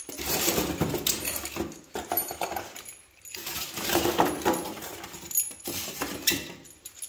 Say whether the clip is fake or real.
real